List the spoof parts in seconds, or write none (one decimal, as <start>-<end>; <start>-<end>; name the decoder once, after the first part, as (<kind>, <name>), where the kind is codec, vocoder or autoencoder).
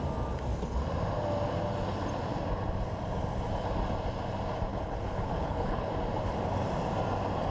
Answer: 4.7-5.9 (codec, HILCodec)